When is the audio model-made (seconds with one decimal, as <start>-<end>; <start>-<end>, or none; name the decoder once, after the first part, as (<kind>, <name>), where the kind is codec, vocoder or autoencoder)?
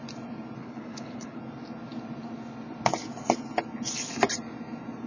0.6-1.4 (codec, HILCodec)